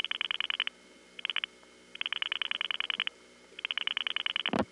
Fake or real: real